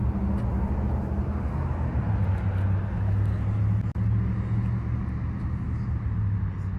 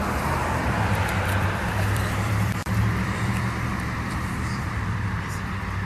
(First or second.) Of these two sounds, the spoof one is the second